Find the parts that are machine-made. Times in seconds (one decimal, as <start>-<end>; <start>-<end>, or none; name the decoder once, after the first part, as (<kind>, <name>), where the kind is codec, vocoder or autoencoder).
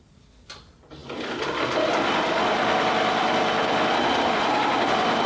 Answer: none